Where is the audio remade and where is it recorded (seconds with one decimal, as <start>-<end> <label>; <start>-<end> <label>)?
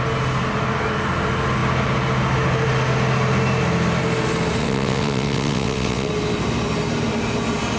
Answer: 0.0-4.6 recorded; 4.6-6.1 remade; 6.1-7.8 recorded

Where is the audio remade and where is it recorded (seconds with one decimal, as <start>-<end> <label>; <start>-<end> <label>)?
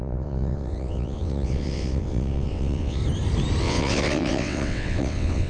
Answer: 0.0-3.0 remade; 3.0-3.6 recorded; 3.6-5.5 remade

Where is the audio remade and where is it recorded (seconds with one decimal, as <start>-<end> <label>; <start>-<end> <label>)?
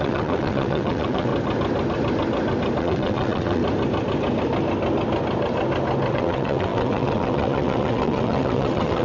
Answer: 0.0-1.3 remade; 1.3-2.8 recorded; 2.8-3.6 remade; 3.6-6.1 recorded; 6.1-9.0 remade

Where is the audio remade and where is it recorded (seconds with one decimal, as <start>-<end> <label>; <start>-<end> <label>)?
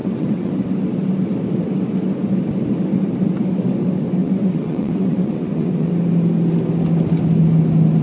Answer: 0.0-0.5 remade; 0.5-4.2 recorded; 4.2-5.9 remade; 5.9-8.0 recorded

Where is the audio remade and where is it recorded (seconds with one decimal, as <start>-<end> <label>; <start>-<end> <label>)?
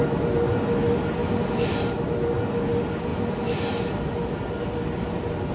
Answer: 0.0-5.5 recorded